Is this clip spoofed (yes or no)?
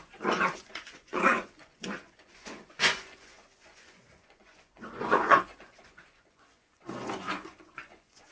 yes